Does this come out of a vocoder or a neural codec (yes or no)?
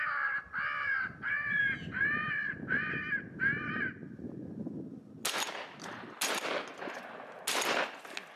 no